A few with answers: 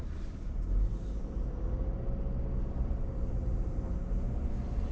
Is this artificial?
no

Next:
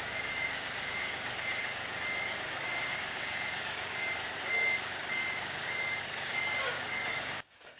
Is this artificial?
yes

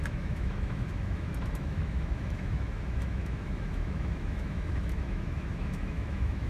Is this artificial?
yes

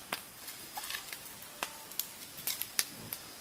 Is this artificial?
no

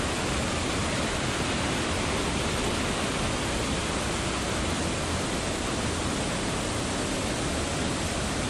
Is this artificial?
no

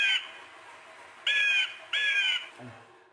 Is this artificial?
no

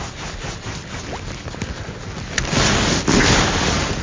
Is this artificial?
no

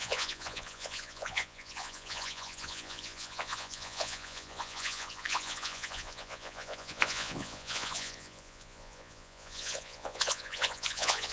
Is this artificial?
yes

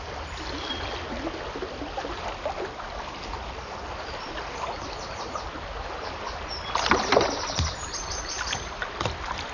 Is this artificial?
no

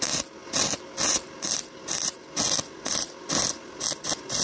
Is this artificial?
no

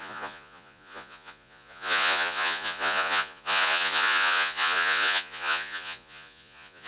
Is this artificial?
yes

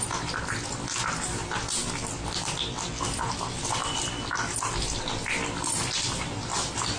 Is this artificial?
no